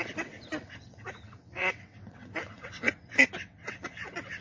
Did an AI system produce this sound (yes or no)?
yes